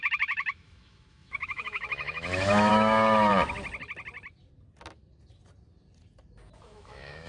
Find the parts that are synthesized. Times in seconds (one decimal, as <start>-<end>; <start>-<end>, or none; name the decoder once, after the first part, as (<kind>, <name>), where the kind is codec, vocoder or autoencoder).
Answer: 0.0-3.3 (autoencoder, DAC-VAE); 6.6-7.3

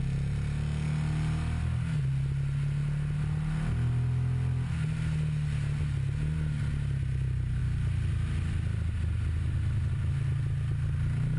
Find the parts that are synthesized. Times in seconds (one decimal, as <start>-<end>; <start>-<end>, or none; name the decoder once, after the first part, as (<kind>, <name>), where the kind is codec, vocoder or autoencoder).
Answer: none

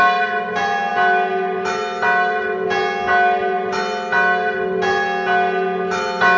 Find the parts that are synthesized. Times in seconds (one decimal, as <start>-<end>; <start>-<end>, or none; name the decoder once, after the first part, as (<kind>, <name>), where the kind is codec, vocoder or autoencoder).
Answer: none

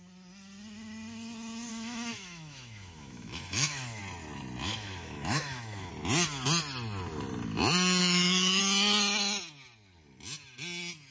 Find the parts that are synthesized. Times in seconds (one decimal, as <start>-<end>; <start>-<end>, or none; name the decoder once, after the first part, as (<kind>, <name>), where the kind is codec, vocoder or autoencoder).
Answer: 1.7-4.0 (autoencoder, DAC-VAE); 4.6-5.9; 8.0-8.6

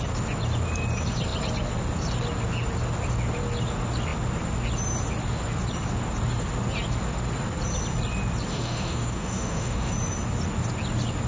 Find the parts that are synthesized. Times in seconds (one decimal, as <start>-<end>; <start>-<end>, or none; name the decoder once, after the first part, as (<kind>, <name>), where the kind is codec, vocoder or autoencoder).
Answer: 8.5-9.9 (autoencoder, DAC-VAE)